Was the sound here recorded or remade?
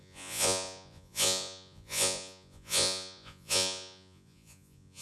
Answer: remade